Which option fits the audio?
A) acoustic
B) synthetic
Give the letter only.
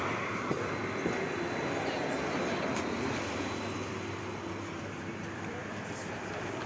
A